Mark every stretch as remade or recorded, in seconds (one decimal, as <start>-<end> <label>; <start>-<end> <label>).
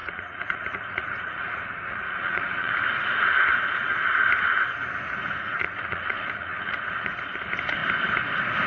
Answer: 0.0-2.8 remade; 2.8-5.2 recorded; 5.2-7.2 remade; 7.2-8.7 recorded